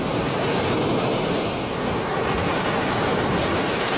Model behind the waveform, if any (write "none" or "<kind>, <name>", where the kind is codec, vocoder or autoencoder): none